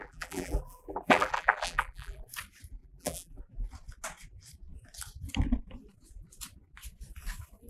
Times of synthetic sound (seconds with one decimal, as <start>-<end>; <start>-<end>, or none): 0.0-2.2; 2.8-3.4

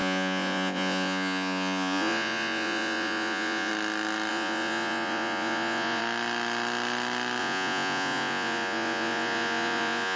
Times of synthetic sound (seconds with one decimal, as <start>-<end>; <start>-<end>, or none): 0.0-3.7; 4.3-6.0; 7.4-10.2

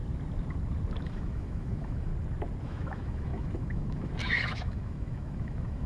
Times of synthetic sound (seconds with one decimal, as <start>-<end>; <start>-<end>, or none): 1.0-2.1; 2.6-5.9

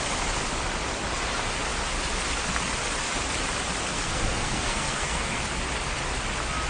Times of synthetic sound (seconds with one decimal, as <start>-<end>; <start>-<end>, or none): 3.9-5.4

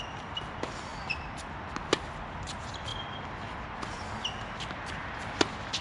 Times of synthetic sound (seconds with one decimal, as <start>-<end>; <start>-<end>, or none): none